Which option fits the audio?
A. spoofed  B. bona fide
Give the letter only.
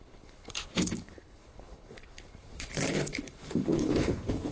A